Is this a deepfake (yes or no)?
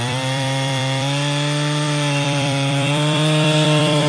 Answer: yes